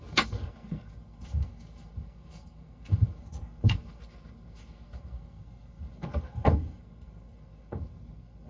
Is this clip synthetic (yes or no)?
yes